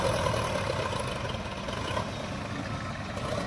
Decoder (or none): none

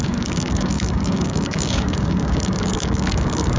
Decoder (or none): codec, DAC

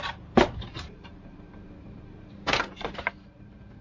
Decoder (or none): vocoder, BigVGAN v2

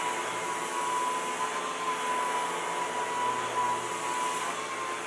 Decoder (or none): none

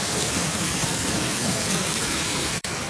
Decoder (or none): codec, SNAC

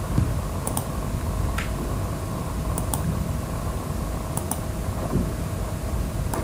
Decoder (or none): vocoder, BigVGAN v2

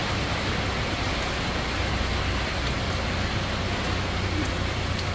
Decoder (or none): none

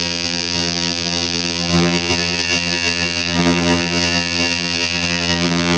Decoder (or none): vocoder, BigVGAN v2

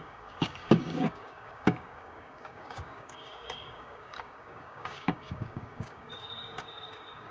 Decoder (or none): codec, DAC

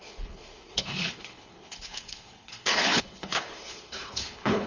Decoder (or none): codec, HILCodec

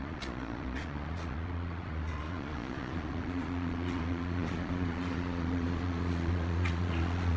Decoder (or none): vocoder, Vocos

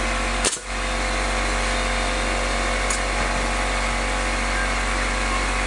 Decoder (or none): vocoder, BigVGAN v2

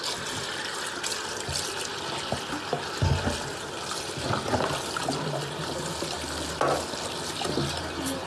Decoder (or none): none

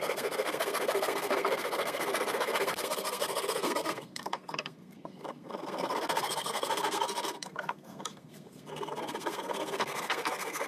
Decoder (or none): codec, SNAC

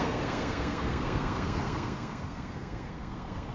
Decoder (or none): codec, SNAC